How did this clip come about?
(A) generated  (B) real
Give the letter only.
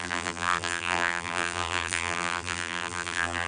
A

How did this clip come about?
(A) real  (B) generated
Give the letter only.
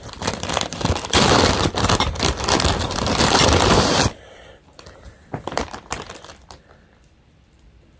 B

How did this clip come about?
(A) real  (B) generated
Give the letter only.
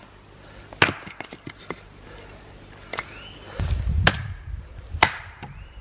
A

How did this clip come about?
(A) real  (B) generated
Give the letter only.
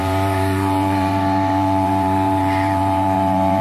B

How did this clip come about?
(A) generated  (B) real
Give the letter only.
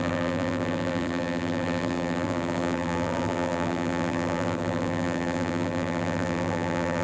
A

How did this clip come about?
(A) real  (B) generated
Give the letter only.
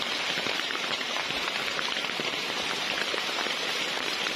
B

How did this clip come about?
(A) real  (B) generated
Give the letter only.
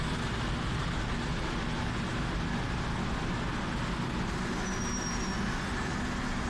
A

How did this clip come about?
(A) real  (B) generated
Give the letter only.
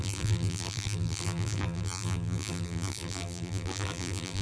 B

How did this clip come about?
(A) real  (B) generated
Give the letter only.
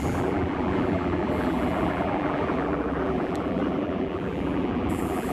B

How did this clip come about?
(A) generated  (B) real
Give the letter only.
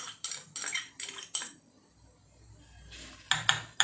B